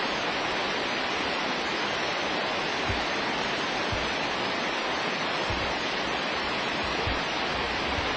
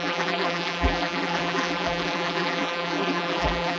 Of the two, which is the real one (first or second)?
first